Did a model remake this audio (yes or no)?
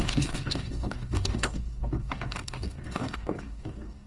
yes